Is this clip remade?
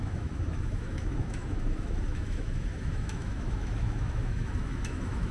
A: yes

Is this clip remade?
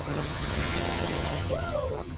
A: yes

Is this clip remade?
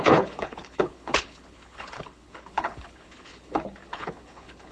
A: yes